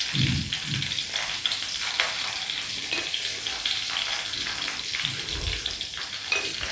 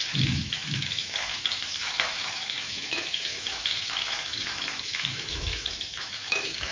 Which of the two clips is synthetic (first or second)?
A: second